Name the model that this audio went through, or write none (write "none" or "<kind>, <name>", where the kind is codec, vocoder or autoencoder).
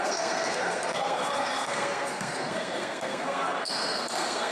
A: codec, SNAC